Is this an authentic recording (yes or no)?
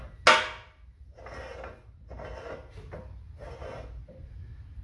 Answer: yes